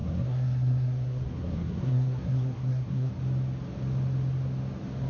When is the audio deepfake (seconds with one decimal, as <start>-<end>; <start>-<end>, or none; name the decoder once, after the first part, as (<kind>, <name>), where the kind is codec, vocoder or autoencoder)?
0.0-3.1 (codec, SNAC)